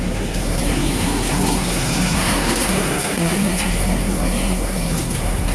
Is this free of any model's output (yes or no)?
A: no